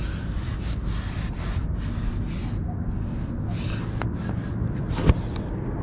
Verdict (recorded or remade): recorded